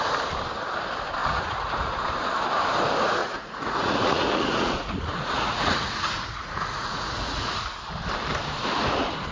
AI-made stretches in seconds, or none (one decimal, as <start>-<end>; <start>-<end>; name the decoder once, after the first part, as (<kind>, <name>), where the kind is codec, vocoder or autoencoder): 1.2-1.9 (vocoder, Vocos); 3.2-7.6